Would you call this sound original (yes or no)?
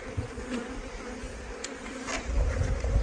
yes